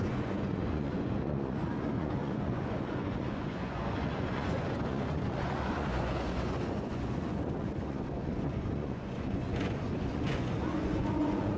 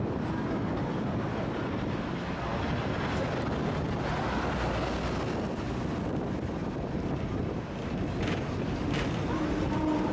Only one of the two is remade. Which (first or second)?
first